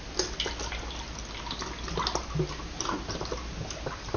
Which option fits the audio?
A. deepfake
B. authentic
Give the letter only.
B